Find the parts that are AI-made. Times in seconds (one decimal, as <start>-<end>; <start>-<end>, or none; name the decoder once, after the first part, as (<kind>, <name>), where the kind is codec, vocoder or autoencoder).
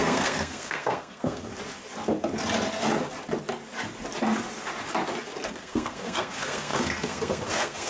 0.0-1.5 (codec, SNAC); 5.5-7.9